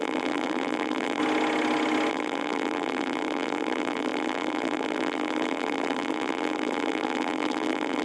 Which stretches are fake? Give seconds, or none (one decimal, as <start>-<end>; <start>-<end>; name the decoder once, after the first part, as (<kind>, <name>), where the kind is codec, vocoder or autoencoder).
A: 0.0-1.2 (vocoder, BigVGAN v2); 2.1-8.0

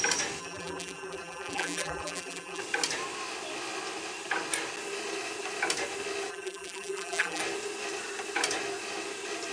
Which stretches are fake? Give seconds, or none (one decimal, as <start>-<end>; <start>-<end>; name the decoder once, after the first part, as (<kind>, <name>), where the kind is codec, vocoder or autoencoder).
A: 0.4-2.6 (vocoder, BigVGAN v2); 6.3-7.4

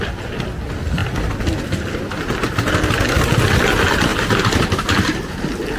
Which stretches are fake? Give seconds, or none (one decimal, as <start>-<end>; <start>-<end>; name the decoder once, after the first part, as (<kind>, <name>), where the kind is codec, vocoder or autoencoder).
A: 4.1-5.3 (vocoder, BigVGAN v2)

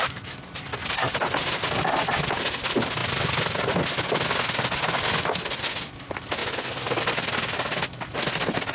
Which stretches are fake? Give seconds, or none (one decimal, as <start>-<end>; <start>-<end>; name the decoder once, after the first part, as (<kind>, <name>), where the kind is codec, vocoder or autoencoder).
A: 0.8-2.3 (vocoder, BigVGAN v2)

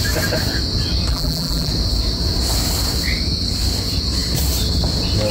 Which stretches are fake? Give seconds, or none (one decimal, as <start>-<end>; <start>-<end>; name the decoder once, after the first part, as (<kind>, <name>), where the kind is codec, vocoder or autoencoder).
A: 1.1-1.7 (vocoder, BigVGAN v2)

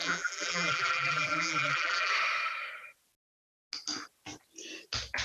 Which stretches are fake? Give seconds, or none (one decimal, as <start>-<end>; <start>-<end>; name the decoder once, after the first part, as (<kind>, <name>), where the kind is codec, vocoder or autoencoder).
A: 0.0-2.1 (vocoder, BigVGAN v2)

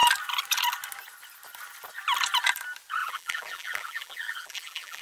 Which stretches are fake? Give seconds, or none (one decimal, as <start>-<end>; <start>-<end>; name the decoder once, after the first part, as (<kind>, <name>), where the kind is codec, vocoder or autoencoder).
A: 3.0-5.0 (vocoder, BigVGAN v2)

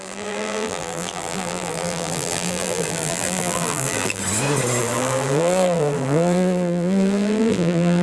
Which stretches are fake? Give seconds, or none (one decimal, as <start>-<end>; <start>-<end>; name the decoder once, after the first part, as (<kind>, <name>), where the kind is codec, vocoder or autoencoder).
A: 0.0-4.2 (vocoder, BigVGAN v2); 4.8-8.0